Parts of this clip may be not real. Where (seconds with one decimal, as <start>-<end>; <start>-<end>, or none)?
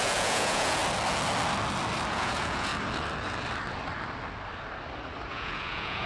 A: 0.0-0.8; 2.1-2.7; 5.3-6.1